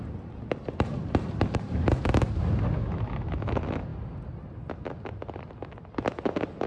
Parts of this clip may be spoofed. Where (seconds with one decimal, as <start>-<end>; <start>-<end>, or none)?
2.8-3.5